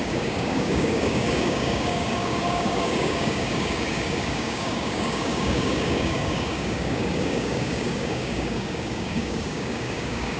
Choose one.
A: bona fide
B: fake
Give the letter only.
B